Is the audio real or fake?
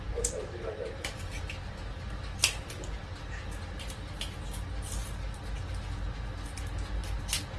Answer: real